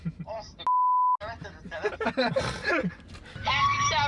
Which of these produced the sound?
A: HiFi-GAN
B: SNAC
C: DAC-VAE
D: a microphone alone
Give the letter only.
D